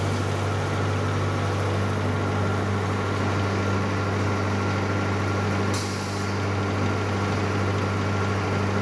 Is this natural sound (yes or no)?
yes